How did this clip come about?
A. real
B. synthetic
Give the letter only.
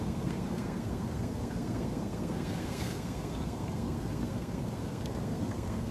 B